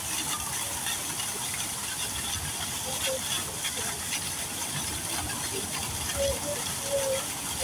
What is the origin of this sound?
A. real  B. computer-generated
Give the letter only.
A